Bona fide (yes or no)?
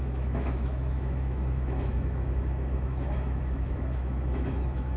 no